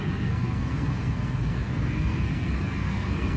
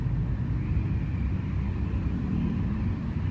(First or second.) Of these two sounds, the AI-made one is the first